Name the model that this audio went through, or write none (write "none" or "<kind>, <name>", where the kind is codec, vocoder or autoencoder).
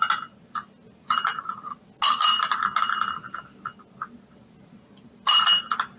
none